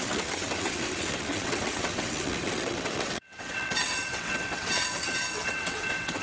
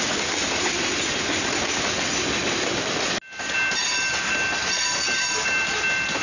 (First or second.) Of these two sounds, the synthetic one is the first